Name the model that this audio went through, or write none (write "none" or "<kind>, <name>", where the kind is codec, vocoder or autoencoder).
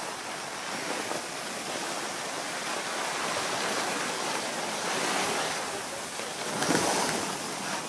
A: none